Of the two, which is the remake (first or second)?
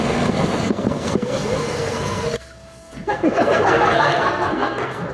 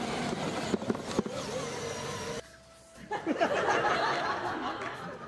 first